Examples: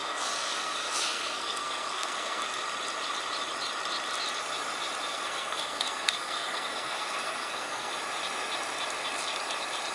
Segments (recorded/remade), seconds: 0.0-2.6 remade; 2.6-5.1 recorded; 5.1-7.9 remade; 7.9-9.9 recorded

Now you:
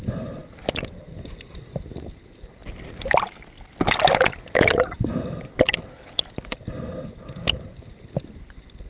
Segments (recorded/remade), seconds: 0.0-8.9 recorded

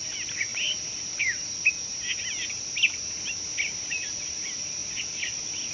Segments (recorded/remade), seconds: 0.0-0.5 remade; 0.5-3.9 recorded; 3.9-5.7 remade

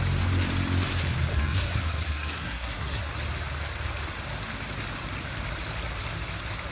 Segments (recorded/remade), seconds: 0.0-1.3 recorded; 1.3-3.1 remade; 3.1-6.7 recorded